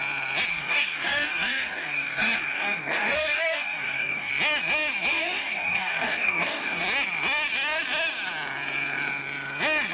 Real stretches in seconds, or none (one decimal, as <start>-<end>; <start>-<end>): 0.0-0.5; 4.3-5.1; 6.8-9.9